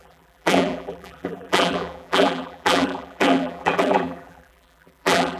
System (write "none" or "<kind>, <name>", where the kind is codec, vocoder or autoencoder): vocoder, BigVGAN v2